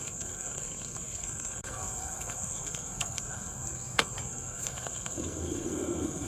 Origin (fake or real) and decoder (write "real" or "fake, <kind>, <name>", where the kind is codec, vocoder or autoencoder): fake, codec, SNAC